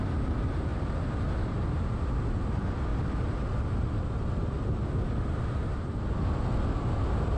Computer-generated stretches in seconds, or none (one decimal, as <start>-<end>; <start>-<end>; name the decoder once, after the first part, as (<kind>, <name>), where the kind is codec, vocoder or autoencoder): 2.9-5.6 (vocoder, BigVGAN v2)